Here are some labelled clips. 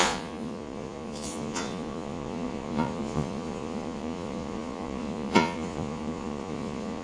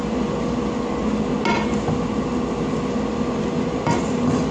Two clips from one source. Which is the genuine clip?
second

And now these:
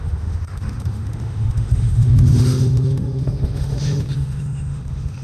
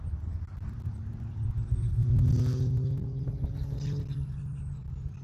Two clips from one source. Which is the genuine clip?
second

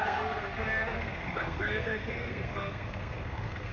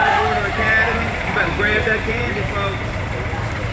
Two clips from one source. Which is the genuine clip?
second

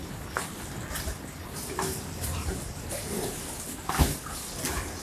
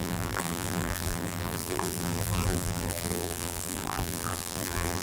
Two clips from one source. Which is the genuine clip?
first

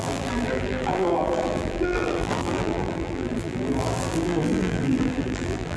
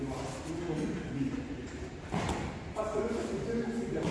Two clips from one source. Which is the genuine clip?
second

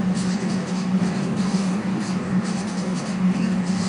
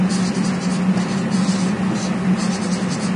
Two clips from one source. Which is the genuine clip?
second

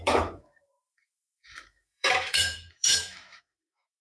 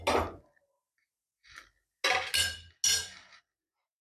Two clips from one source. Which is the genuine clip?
second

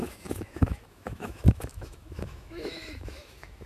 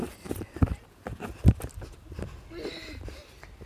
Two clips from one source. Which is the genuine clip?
second